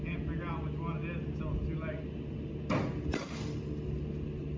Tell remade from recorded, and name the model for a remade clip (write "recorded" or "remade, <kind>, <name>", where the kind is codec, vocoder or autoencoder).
recorded